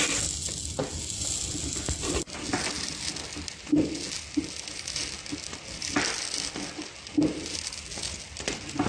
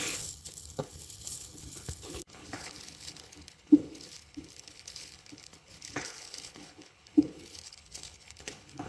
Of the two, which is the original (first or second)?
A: first